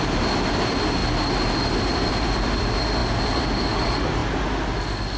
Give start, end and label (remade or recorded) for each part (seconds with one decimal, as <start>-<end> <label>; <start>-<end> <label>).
0.0-5.2 recorded